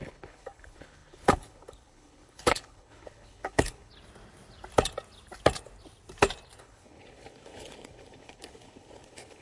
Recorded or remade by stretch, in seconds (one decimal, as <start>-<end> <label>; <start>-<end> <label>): 0.0-3.9 remade; 3.9-6.6 recorded; 6.6-9.4 remade